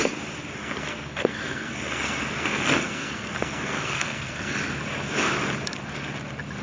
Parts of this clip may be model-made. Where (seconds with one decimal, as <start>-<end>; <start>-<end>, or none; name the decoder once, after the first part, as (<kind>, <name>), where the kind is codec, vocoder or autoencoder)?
0.6-4.6 (codec, SNAC)